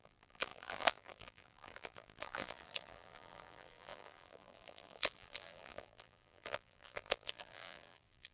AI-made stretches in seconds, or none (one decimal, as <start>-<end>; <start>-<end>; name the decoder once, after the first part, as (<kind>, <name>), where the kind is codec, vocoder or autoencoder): 0.0-8.3 (vocoder, BigVGAN v2)